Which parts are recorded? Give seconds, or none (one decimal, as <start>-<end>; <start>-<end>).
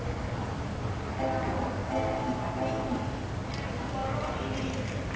0.0-5.2